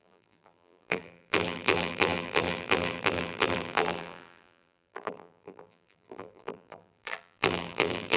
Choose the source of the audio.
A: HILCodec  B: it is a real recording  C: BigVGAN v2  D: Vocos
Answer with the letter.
C